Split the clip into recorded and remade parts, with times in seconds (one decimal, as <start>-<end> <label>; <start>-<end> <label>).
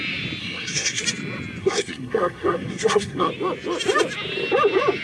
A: 0.0-0.4 recorded; 0.4-1.0 remade; 1.0-1.6 recorded; 1.6-3.3 remade; 3.3-5.0 recorded